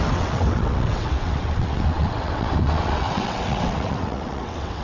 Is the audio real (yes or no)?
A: no